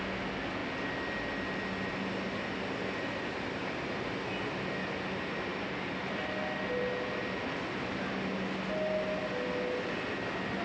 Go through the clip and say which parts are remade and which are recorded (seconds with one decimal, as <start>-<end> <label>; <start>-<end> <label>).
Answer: 0.0-10.6 recorded